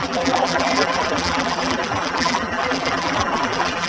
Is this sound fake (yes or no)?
yes